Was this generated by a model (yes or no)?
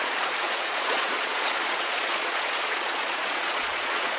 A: yes